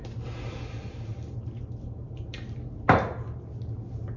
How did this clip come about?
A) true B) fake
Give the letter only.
A